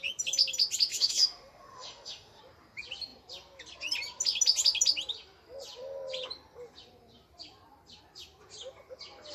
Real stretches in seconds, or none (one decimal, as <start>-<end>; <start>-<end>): 0.0-0.9; 2.4-9.3